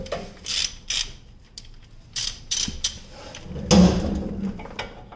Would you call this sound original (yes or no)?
yes